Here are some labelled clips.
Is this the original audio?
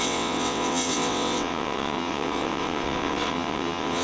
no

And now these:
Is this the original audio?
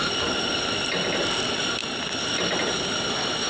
yes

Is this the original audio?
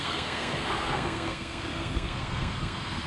no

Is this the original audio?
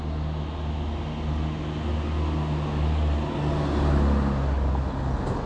yes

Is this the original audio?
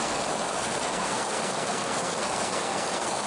no